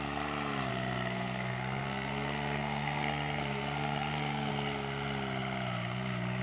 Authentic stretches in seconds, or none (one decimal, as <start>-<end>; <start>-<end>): 0.0-0.7; 4.5-6.4